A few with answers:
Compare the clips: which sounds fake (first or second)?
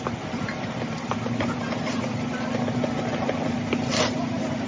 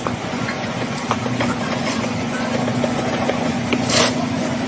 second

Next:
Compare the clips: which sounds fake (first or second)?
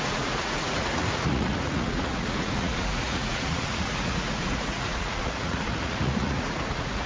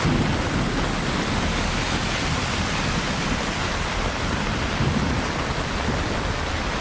first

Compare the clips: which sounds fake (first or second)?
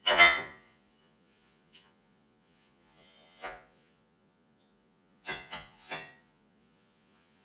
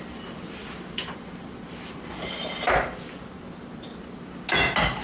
first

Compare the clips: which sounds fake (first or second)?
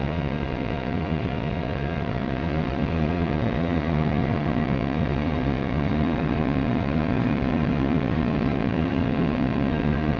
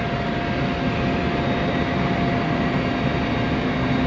first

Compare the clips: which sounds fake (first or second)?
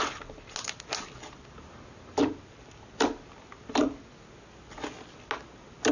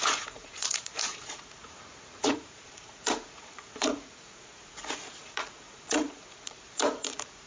second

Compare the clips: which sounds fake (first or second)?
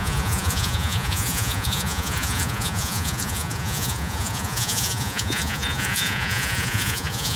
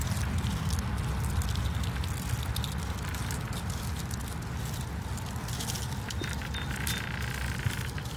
first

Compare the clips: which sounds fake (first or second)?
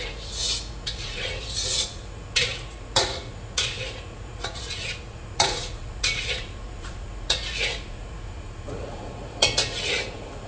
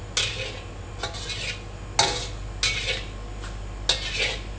first